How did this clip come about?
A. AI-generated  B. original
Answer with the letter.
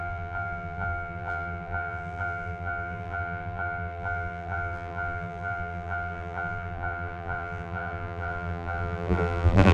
A